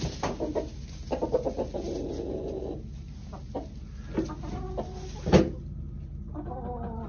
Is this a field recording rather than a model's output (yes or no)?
yes